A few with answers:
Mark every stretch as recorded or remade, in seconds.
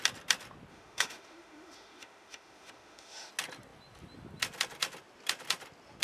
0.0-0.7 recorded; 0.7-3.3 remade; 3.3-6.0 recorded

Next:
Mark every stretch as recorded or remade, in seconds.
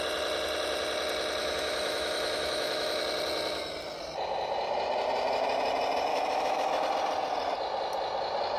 0.0-1.4 recorded; 1.4-3.0 remade; 3.0-6.1 recorded; 6.1-6.8 remade; 6.8-8.6 recorded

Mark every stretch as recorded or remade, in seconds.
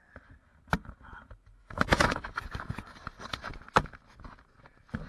0.0-1.6 recorded; 1.6-2.3 remade; 2.3-5.1 recorded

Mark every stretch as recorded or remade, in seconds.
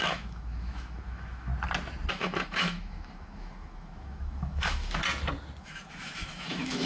0.0-1.5 remade; 1.5-2.1 recorded; 2.1-5.0 remade; 5.0-5.6 recorded; 5.6-6.9 remade